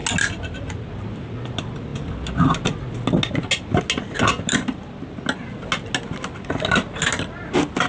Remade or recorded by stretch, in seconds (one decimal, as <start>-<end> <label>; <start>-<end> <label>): 0.0-7.9 recorded